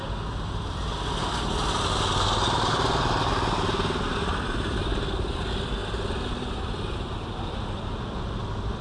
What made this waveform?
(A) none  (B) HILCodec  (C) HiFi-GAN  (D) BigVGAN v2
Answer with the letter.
A